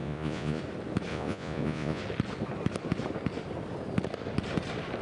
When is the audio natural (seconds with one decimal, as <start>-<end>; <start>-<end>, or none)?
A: 0.6-1.1; 2.0-5.0